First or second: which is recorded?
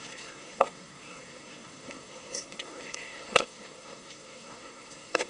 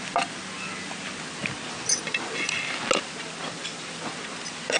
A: second